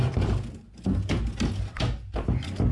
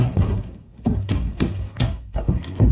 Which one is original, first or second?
first